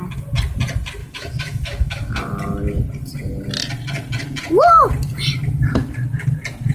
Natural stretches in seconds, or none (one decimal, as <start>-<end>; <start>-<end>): 0.0-1.0; 2.2-6.7